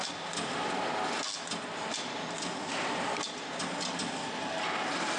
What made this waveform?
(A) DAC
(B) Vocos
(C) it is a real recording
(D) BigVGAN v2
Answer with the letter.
C